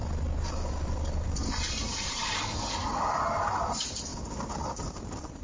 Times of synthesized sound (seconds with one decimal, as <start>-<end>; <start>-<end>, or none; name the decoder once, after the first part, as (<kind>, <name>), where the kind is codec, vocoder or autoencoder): 0.0-2.6 (vocoder, BigVGAN v2)